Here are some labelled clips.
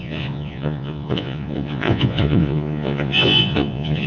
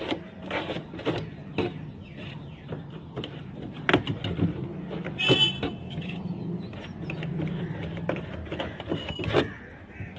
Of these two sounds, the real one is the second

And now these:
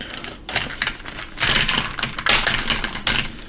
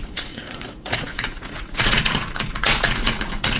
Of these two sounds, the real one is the first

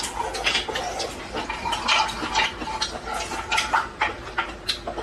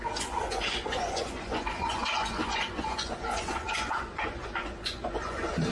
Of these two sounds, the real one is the first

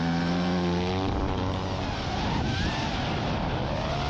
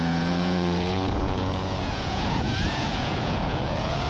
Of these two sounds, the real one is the first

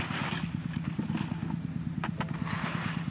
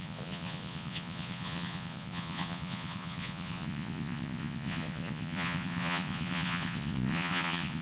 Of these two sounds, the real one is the first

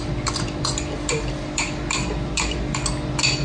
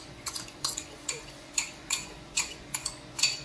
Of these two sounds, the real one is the first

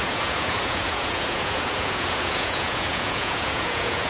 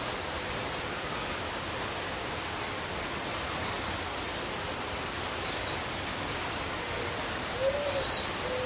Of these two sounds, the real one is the second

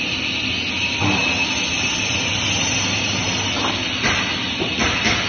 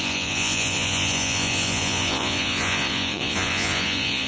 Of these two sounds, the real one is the first